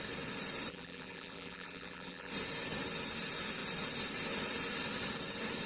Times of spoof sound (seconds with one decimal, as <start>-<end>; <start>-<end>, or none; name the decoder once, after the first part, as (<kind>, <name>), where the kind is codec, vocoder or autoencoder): 0.7-2.3 (vocoder, BigVGAN v2)